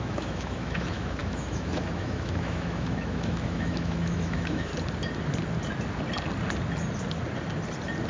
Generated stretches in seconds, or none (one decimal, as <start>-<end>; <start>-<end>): 0.0-4.7